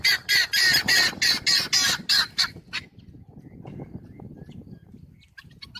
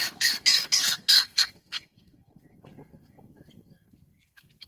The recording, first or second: first